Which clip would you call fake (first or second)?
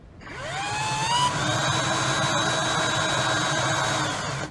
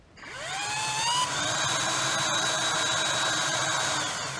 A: second